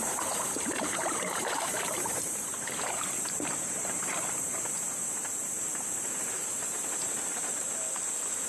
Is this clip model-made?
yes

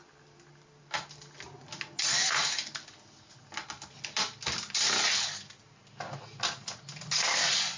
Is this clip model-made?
no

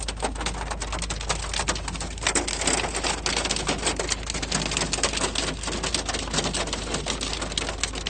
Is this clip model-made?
no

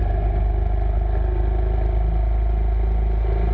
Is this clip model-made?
no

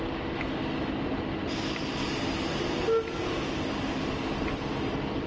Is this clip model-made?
no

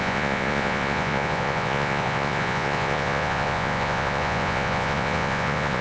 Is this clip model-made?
yes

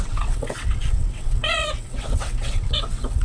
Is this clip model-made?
yes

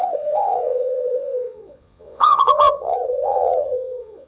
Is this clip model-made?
yes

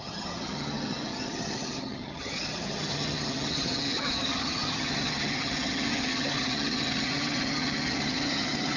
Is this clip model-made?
yes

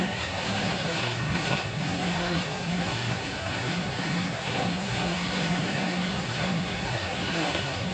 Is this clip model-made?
yes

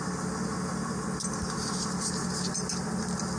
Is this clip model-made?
no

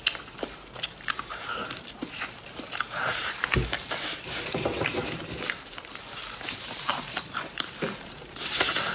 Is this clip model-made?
yes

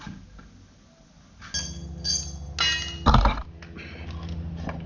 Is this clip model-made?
no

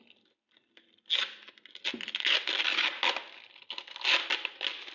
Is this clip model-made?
no